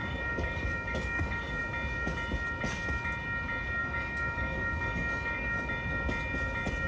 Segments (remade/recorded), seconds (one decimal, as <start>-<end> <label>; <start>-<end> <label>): 0.0-1.6 remade; 1.6-3.8 recorded; 3.8-5.7 remade; 5.7-6.9 recorded

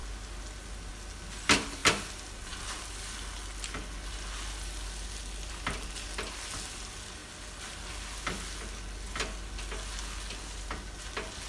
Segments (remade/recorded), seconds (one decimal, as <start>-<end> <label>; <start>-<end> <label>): 0.0-11.5 recorded

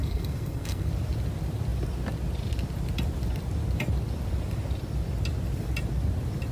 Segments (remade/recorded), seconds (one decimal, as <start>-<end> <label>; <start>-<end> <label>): 0.0-0.9 remade; 0.9-6.5 recorded

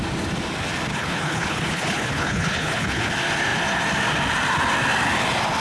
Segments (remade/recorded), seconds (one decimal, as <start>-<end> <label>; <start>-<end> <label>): 0.0-0.9 recorded; 0.9-3.1 remade; 3.1-5.6 recorded

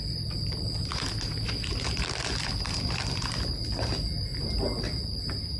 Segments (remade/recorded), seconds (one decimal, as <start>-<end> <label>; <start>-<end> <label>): 0.0-4.3 remade; 4.3-4.8 recorded; 4.8-5.6 remade